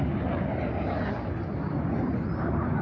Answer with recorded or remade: recorded